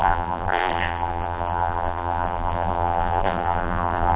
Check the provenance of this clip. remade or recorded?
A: remade